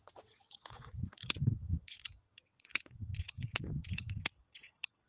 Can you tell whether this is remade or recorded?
remade